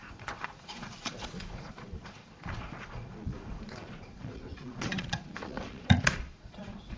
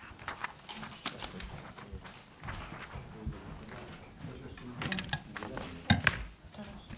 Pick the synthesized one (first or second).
first